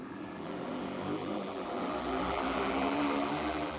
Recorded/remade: remade